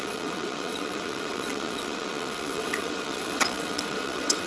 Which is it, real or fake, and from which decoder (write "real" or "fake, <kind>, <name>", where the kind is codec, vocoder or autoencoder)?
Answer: fake, vocoder, WaveNeXt